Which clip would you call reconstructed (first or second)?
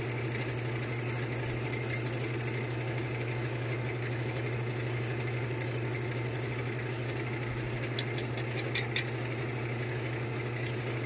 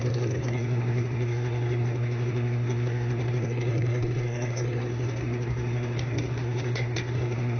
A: second